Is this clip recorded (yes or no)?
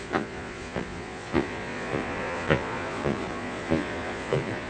no